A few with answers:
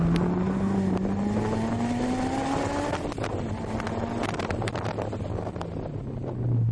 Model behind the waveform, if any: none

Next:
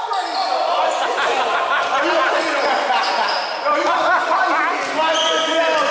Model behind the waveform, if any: none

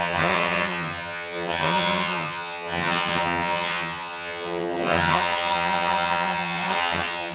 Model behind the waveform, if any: vocoder, HiFi-GAN